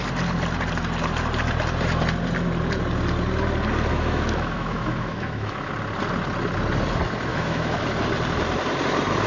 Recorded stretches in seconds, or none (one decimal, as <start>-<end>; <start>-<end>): 0.0-3.9; 5.7-7.3; 7.8-9.3